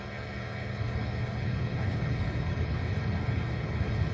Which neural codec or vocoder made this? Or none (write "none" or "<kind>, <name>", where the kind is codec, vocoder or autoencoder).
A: codec, HILCodec